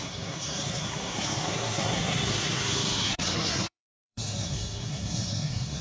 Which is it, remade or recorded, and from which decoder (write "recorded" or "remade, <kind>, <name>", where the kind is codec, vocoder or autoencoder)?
remade, codec, SNAC